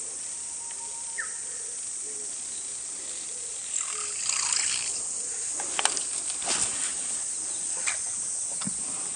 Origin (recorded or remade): recorded